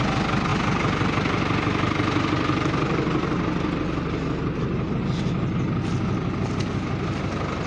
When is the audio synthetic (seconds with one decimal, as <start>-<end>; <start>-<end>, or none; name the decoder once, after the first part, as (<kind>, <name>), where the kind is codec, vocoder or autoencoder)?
none

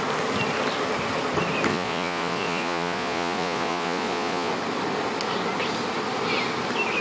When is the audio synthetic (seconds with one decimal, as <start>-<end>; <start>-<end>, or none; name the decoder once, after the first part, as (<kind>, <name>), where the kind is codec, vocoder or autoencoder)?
1.7-4.5 (vocoder, Vocos)

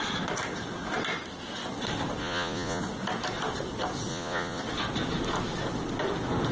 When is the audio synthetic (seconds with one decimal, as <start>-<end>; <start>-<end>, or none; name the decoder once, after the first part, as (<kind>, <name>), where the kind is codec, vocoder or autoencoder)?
2.2-2.8 (vocoder, Vocos); 4.1-4.6

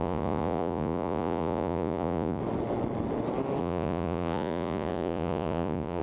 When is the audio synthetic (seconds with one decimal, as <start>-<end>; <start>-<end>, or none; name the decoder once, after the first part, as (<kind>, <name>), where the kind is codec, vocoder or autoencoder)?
0.0-2.4 (vocoder, Vocos); 3.6-6.0